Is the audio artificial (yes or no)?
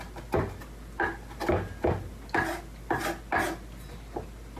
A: no